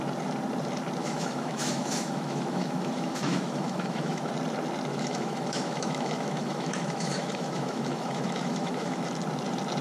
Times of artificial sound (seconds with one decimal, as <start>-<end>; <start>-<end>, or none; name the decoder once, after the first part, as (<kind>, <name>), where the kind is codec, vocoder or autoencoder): 1.0-4.3 (autoencoder, DAC-VAE); 4.9-9.0